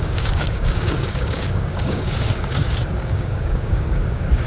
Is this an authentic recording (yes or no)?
no